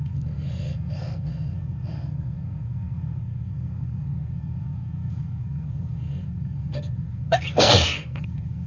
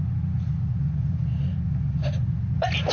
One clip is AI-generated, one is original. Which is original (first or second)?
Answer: second